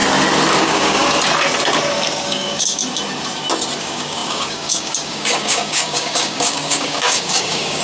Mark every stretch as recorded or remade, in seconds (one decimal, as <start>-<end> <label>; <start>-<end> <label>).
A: 0.0-0.6 recorded; 0.6-1.0 remade; 1.0-2.1 recorded; 2.1-2.8 remade; 2.8-3.8 recorded; 3.8-7.8 remade